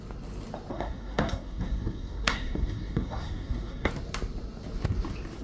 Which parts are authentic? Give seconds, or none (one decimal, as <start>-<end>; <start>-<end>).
0.0-0.7; 3.9-5.4